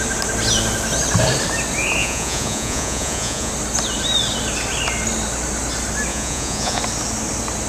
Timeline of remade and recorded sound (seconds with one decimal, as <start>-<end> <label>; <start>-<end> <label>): 0.0-2.0 recorded; 2.0-3.5 remade; 3.5-6.1 recorded; 6.1-6.8 remade; 6.8-7.7 recorded